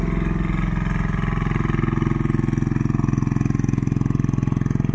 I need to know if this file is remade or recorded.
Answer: recorded